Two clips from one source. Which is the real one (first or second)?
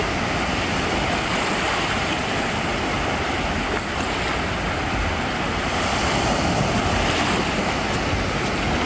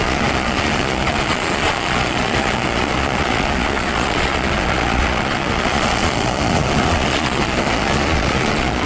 first